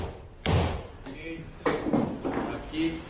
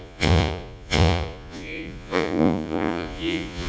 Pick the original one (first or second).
first